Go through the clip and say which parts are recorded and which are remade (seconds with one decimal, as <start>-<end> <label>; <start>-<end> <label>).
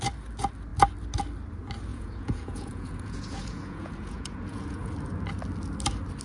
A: 0.0-1.9 recorded; 1.9-4.9 remade; 4.9-6.2 recorded